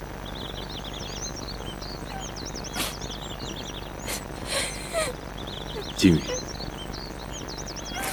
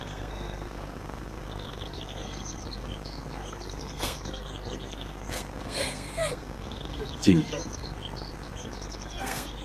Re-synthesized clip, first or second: second